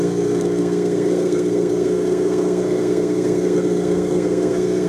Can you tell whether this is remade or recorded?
remade